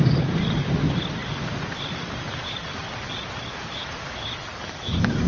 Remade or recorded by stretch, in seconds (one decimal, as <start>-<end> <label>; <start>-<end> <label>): 0.0-3.8 recorded; 3.8-5.3 remade